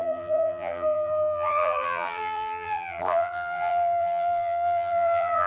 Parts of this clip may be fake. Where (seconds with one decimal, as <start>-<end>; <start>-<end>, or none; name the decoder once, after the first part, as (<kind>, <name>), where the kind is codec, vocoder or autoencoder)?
0.0-5.5 (vocoder, BigVGAN v2)